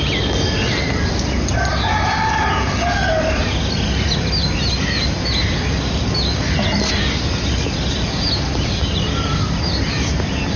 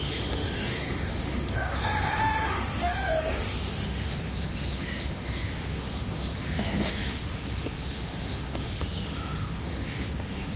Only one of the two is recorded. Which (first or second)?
first